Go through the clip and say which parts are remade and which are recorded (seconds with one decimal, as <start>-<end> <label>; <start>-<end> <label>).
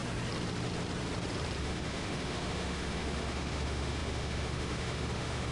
0.0-1.6 recorded; 1.6-5.5 remade